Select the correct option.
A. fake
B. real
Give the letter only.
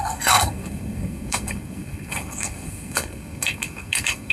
A